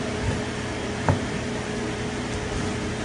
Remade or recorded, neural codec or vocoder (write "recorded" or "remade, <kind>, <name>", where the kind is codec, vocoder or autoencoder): recorded